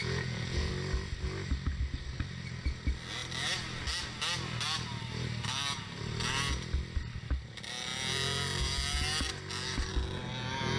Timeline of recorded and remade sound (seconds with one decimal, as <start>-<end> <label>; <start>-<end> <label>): 0.0-0.7 remade; 0.7-10.8 recorded